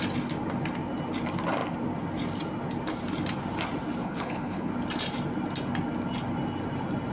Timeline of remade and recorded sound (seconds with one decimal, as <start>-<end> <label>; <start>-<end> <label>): 0.0-4.0 recorded; 4.0-4.7 remade; 4.7-7.1 recorded